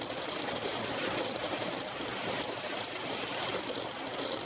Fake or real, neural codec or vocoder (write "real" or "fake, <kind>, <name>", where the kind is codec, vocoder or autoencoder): real